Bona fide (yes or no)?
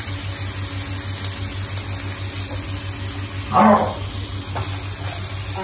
yes